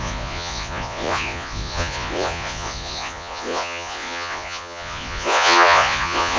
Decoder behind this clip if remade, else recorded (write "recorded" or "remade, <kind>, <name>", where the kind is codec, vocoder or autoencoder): remade, vocoder, Vocos